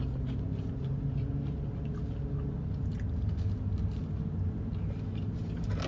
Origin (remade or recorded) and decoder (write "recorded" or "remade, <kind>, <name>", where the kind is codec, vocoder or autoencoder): recorded